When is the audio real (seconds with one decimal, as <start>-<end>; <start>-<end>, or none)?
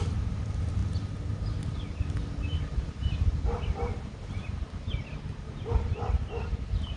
0.0-7.0